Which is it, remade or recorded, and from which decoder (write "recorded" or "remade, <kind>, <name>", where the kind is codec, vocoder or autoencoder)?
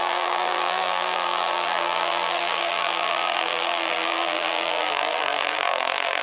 remade, vocoder, BigVGAN v2